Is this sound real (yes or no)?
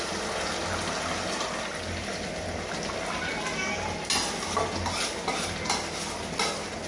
yes